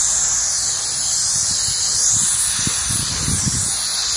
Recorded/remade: recorded